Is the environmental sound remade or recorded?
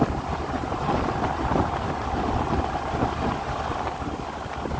recorded